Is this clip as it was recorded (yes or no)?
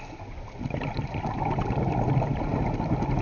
yes